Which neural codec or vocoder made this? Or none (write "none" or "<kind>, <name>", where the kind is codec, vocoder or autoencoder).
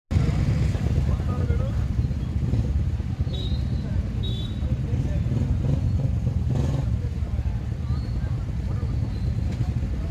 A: none